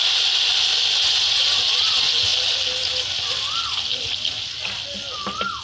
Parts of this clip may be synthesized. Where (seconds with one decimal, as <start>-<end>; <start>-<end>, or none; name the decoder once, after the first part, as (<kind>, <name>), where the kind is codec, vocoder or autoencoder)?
none